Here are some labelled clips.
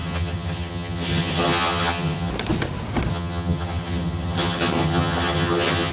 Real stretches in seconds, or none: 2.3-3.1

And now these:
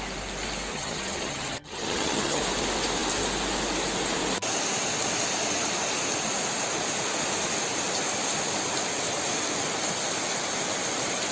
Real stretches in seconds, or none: 0.0-0.7; 2.4-11.3

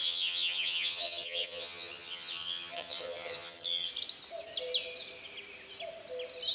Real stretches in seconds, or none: 3.9-6.5

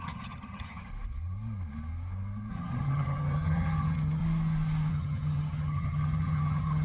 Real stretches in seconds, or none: 0.9-2.5; 4.2-4.9

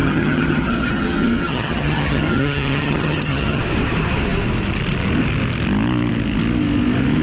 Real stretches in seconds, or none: 3.6-7.2

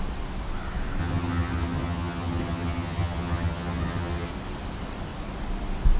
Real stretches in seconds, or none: 0.0-1.0; 4.3-6.0

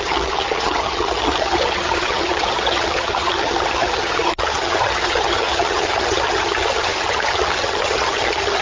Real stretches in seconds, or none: none

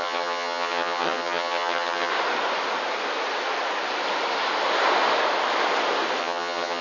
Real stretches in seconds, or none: 2.1-6.2